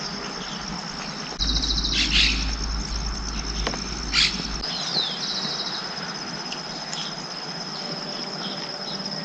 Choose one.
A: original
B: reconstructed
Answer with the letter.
A